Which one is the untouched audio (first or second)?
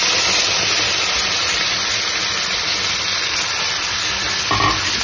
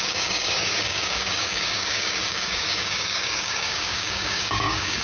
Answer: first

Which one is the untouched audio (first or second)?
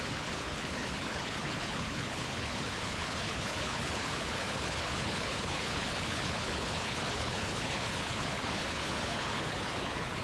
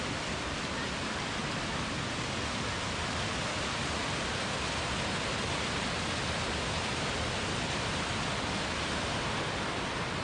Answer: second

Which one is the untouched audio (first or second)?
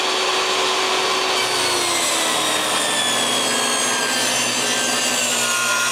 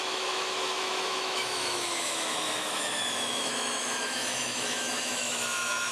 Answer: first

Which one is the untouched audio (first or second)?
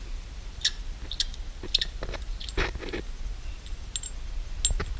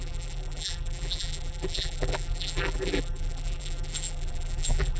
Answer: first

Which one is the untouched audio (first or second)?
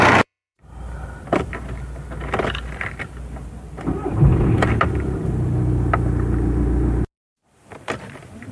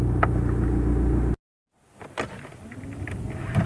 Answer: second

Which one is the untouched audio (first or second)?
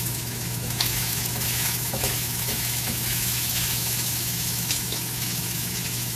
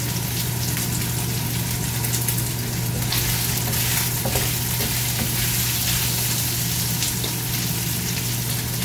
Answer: second